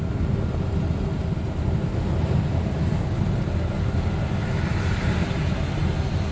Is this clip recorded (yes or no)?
yes